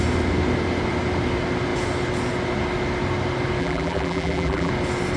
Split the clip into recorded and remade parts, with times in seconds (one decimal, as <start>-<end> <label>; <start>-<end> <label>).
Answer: 0.0-3.6 recorded; 3.6-4.7 remade; 4.7-5.2 recorded

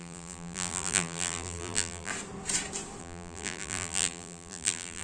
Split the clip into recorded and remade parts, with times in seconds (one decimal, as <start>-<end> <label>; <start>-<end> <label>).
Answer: 0.0-2.1 remade; 2.1-3.0 recorded; 3.0-5.0 remade

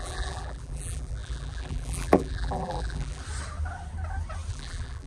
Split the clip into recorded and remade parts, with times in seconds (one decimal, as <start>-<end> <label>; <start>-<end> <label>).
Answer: 0.0-3.2 remade; 3.2-4.5 recorded; 4.5-5.1 remade

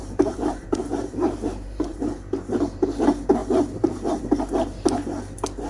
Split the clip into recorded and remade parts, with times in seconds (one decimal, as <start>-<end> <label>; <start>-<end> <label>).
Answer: 0.0-3.0 remade; 3.0-3.4 recorded; 3.4-4.2 remade; 4.2-5.7 recorded

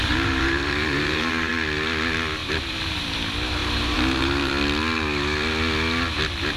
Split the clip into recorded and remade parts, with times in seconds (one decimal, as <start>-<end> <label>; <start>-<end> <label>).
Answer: 0.0-1.5 remade; 1.5-2.4 recorded; 2.4-3.0 remade; 3.0-3.6 recorded; 3.6-4.5 remade; 4.5-6.6 recorded

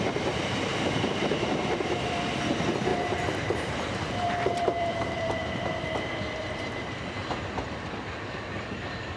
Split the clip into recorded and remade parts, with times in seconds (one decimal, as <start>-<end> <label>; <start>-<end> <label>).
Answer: 0.0-0.7 recorded; 0.7-1.3 remade; 1.3-2.9 recorded; 2.9-7.4 remade; 7.4-9.2 recorded